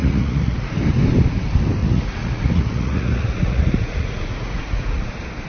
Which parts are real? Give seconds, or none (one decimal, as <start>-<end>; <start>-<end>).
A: 0.7-1.8; 5.1-5.5